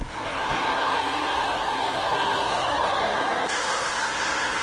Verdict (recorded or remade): remade